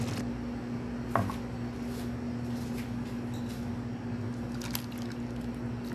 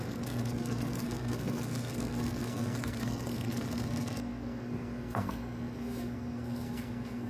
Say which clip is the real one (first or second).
first